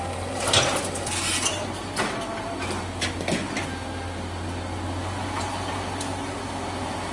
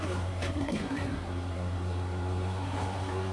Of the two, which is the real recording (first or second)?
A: first